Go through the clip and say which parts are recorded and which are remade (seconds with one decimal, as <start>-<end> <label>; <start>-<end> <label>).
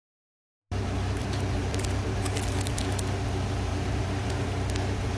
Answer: 0.0-1.2 recorded; 1.2-2.2 remade; 2.2-3.7 recorded; 3.7-4.3 remade; 4.3-5.2 recorded